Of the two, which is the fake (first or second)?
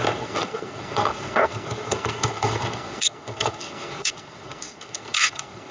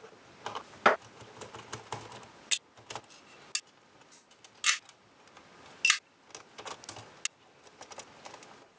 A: first